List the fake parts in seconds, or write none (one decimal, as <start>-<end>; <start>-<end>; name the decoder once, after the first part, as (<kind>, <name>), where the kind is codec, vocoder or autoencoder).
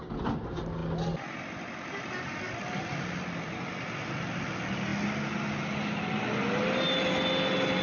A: none